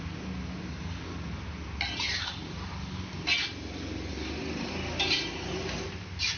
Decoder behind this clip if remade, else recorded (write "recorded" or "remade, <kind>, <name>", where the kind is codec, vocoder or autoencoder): recorded